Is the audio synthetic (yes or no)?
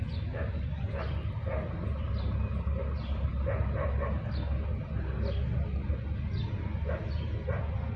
no